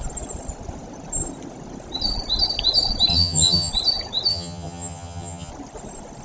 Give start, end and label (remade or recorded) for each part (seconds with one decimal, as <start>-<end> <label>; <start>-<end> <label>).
0.0-3.1 recorded; 3.1-3.7 remade; 3.7-4.3 recorded; 4.3-5.5 remade; 5.5-6.2 recorded